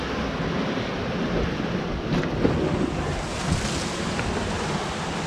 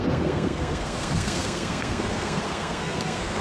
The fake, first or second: second